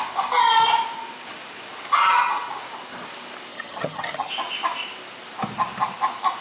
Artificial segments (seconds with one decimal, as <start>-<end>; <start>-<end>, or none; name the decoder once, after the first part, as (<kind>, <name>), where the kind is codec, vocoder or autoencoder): 3.5-4.3 (vocoder, HiFi-GAN)